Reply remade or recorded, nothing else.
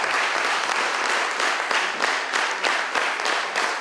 recorded